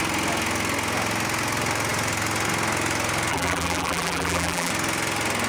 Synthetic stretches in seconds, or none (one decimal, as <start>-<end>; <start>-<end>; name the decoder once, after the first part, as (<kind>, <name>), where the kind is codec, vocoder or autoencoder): 3.3-4.7 (vocoder, BigVGAN v2)